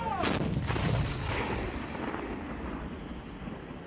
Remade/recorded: recorded